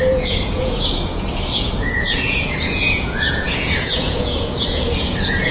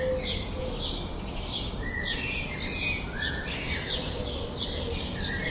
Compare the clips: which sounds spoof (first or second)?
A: first